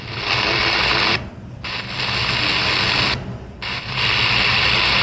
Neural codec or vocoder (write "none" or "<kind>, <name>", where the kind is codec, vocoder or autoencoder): none